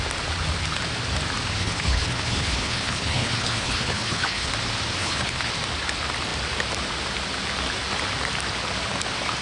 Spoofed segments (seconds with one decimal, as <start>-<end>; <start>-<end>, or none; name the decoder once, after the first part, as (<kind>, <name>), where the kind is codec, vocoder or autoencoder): 1.6-4.5 (codec, HILCodec); 5.0-5.5